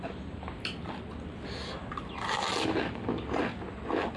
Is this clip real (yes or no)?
yes